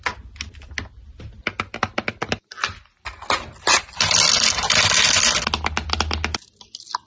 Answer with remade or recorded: recorded